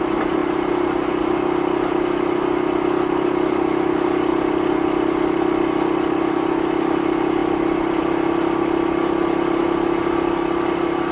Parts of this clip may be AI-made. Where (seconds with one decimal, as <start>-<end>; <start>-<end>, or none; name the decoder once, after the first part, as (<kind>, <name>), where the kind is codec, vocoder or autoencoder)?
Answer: none